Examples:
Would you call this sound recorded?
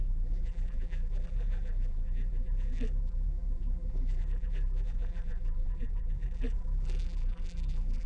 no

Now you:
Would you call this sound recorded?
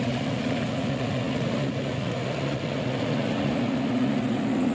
no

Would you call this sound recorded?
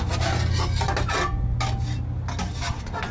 yes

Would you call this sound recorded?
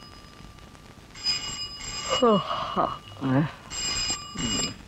yes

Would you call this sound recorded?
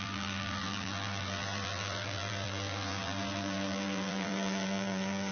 no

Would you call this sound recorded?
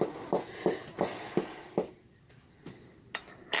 yes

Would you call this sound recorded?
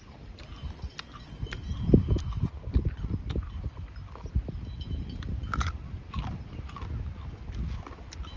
yes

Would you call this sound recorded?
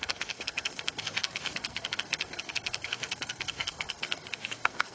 no